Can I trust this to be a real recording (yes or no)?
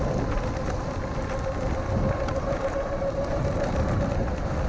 yes